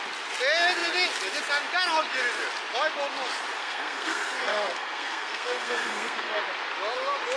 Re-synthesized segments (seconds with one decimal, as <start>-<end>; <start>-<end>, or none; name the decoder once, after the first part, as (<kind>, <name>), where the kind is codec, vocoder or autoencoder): 3.6-6.4 (codec, SNAC)